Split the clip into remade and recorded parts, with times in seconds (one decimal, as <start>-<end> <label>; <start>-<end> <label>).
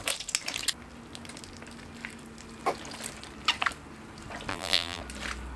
0.0-4.5 recorded; 4.5-5.0 remade; 5.0-5.6 recorded